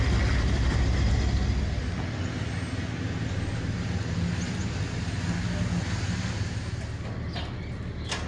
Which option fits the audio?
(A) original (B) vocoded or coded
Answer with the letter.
A